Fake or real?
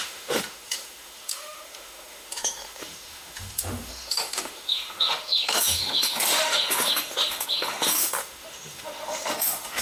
fake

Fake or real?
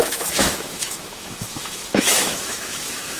fake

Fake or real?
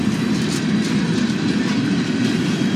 real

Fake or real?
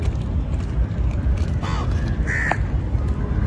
real